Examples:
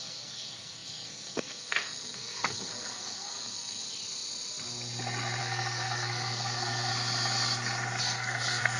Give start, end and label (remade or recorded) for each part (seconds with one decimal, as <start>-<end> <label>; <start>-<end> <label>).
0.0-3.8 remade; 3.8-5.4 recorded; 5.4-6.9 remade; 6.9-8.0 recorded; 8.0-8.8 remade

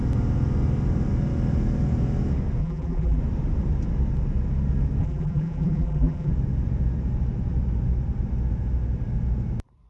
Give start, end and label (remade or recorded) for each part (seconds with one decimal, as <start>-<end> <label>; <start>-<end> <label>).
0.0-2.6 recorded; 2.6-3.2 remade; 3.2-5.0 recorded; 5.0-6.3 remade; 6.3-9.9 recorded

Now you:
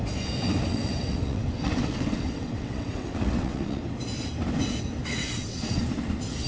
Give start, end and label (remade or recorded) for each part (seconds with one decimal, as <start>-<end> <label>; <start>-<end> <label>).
0.0-0.4 recorded; 0.4-3.8 remade; 3.8-5.0 recorded; 5.0-5.8 remade; 5.8-6.5 recorded

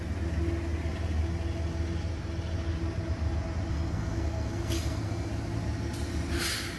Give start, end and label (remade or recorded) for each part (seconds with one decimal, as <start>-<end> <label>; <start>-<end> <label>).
0.0-3.7 recorded; 3.7-5.3 remade; 5.3-6.8 recorded

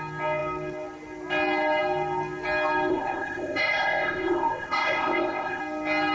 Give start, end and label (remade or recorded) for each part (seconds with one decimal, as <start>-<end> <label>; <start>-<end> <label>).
0.0-2.9 recorded; 2.9-5.6 remade; 5.6-6.1 recorded